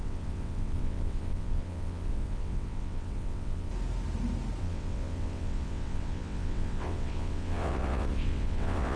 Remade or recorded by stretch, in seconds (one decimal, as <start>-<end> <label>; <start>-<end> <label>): 0.0-3.7 remade; 3.7-4.6 recorded; 4.6-9.0 remade